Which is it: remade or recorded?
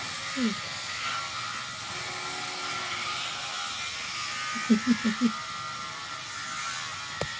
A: recorded